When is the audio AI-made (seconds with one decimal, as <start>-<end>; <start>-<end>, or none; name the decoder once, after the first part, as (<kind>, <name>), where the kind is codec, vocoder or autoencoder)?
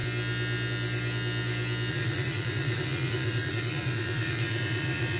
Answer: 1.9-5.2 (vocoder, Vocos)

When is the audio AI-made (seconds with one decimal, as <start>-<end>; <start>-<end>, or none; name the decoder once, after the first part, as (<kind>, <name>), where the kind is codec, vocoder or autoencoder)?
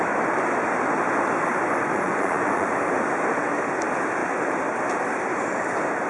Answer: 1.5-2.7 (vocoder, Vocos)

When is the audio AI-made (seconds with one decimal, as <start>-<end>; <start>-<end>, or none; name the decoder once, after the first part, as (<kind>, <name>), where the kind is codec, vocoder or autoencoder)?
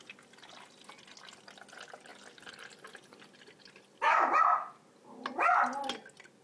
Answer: none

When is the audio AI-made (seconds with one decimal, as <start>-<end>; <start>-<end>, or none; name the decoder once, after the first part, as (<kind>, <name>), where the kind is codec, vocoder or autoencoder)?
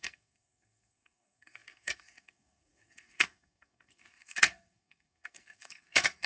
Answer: 0.0-6.3 (codec, SNAC)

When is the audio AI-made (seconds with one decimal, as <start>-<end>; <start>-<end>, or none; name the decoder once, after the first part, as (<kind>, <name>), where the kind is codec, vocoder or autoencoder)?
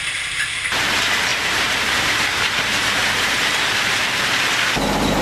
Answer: 1.3-4.3 (vocoder, BigVGAN v2)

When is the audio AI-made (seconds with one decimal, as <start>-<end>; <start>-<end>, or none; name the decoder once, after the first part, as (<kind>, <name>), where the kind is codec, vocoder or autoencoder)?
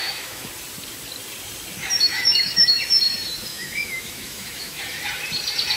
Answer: 0.0-0.5 (autoencoder, DAC-VAE); 2.1-2.8; 3.5-4.8